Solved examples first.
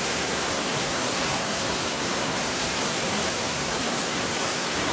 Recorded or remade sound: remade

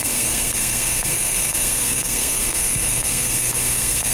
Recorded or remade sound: remade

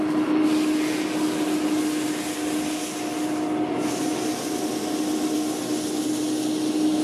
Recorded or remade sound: recorded